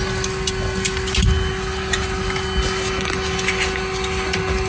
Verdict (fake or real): real